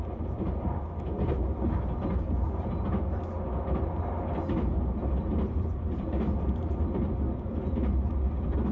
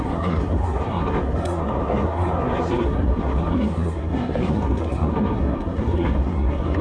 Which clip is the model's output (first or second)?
second